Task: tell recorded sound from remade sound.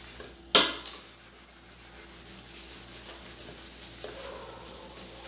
recorded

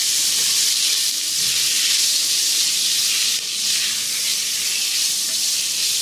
remade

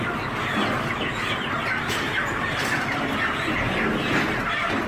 recorded